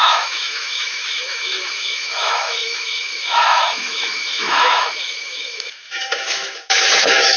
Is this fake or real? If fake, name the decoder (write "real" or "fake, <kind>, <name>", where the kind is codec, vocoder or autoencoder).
fake, autoencoder, DAC-VAE